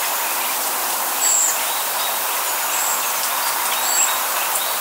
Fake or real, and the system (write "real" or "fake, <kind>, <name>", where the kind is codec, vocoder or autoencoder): real